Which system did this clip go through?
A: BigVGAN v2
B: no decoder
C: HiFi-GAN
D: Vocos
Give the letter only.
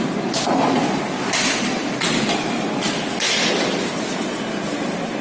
B